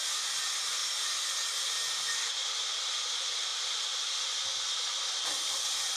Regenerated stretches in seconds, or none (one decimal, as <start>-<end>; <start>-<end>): none